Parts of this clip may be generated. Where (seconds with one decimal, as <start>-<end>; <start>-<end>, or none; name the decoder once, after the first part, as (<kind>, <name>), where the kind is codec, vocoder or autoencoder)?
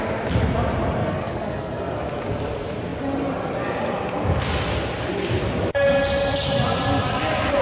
1.0-2.0 (codec, SNAC)